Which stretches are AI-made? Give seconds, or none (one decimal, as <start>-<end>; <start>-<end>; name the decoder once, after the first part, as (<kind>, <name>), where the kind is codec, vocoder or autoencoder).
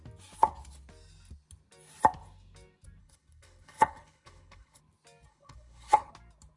3.0-4.8 (codec, HILCodec); 5.3-6.1